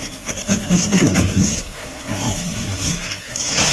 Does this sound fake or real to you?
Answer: fake